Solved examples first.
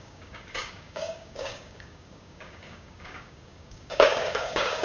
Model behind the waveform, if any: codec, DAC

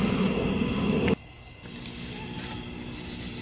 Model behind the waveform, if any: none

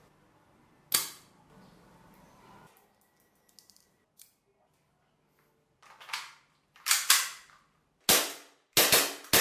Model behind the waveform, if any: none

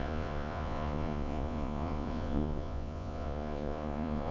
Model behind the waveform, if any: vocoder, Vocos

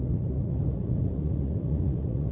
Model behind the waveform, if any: vocoder, Vocos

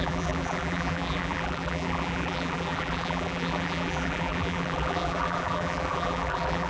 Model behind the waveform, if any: vocoder, BigVGAN v2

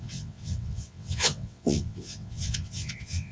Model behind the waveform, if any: vocoder, WaveNeXt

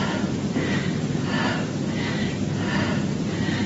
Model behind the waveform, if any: none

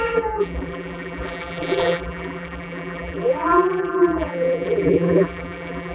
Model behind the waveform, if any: vocoder, BigVGAN v2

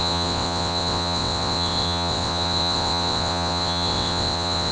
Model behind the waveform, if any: vocoder, WaveNeXt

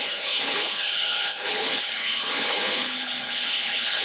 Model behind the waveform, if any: codec, HILCodec